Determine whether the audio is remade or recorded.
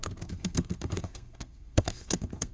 remade